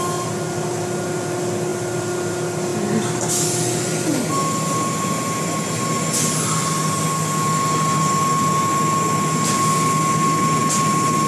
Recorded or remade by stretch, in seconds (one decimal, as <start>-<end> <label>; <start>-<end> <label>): 0.0-11.3 recorded